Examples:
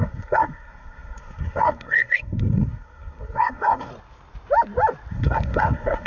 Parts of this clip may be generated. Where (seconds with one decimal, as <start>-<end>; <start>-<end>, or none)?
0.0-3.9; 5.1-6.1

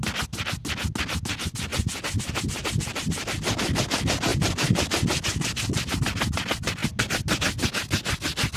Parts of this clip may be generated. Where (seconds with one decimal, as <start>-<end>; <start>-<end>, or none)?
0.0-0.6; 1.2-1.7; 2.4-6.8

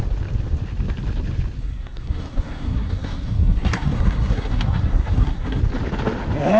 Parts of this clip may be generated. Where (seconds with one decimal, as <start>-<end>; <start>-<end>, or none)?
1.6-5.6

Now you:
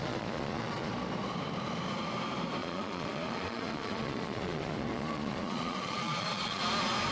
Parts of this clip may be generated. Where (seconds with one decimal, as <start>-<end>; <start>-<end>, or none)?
0.0-0.9; 2.6-6.6

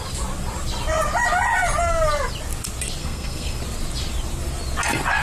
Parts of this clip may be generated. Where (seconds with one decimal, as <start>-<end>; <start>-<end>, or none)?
3.0-3.6